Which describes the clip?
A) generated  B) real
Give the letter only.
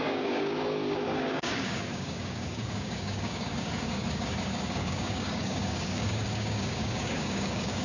A